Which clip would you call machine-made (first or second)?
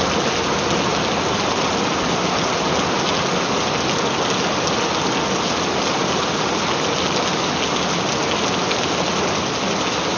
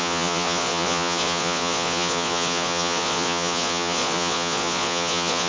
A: second